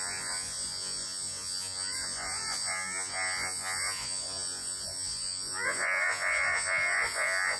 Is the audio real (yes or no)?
no